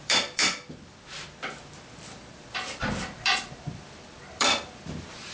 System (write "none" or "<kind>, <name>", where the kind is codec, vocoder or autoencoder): vocoder, BigVGAN v2